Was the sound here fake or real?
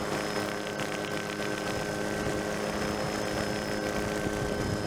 real